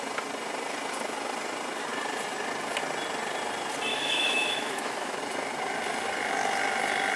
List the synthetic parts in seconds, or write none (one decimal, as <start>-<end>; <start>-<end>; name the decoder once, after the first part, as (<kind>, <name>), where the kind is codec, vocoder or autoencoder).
3.9-5.2 (autoencoder, DAC-VAE)